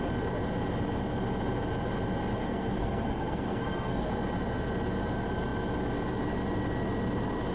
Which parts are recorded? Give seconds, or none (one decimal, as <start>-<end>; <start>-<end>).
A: 0.0-2.5; 4.1-7.5